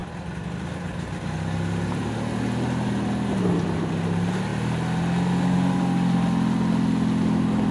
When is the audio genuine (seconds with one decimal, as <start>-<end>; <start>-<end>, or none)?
0.0-7.7